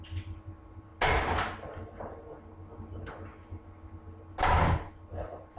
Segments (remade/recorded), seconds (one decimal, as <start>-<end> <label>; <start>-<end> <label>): 0.0-5.6 recorded